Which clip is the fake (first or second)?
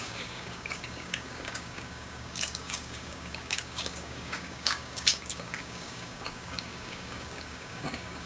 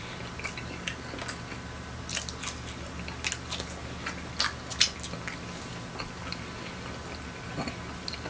first